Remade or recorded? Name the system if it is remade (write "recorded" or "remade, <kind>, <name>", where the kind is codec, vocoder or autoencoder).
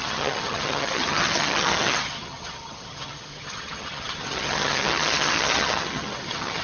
remade, vocoder, HiFi-GAN